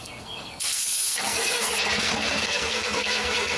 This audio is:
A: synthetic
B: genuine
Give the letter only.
A